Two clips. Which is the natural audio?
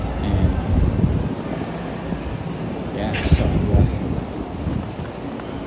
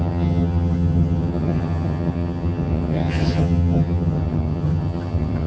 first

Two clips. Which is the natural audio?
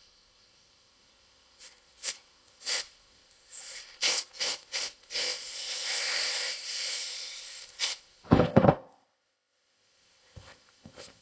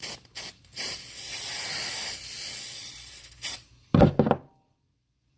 second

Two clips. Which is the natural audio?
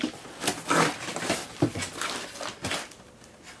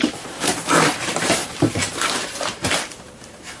first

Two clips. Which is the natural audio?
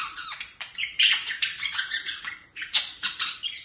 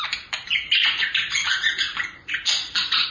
second